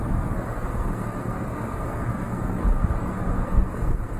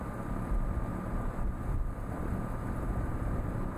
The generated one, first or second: first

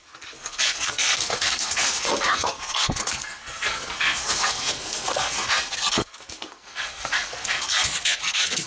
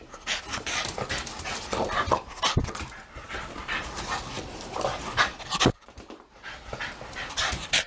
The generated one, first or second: first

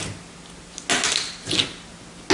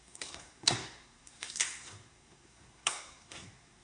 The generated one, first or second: second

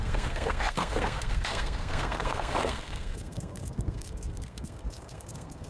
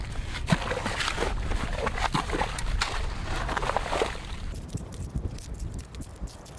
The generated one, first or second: first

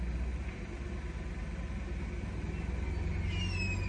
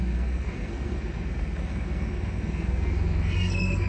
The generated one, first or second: second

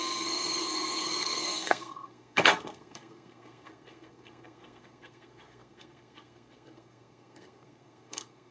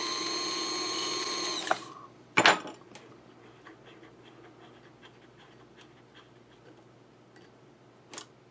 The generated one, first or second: first